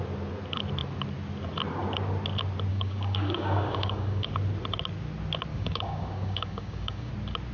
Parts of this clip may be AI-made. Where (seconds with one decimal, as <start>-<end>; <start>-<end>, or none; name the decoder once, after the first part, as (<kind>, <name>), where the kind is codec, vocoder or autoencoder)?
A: 2.7-4.3 (codec, DAC); 5.5-7.1